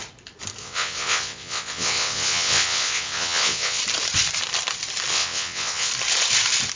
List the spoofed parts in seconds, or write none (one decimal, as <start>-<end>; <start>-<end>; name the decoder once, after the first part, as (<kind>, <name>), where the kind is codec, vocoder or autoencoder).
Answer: 0.6-3.8 (vocoder, WaveNeXt); 5.1-5.9